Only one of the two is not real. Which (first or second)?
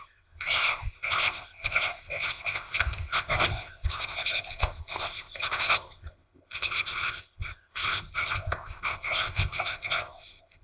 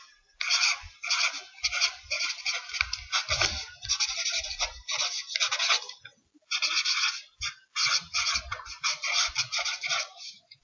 first